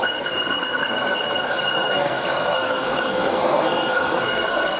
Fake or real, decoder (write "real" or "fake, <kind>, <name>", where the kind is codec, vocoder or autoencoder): fake, codec, SNAC